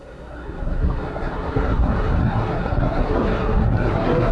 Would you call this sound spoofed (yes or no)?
yes